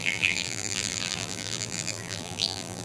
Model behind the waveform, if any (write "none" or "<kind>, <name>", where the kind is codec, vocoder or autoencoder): vocoder, BigVGAN v2